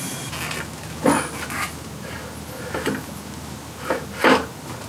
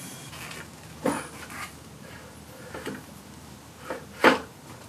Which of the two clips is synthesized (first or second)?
second